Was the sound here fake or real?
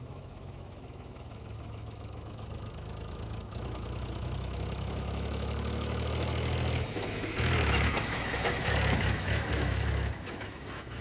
fake